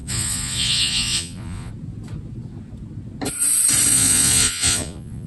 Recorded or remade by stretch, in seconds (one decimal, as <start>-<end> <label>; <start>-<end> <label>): 0.0-1.7 remade; 1.7-3.9 recorded; 3.9-5.3 remade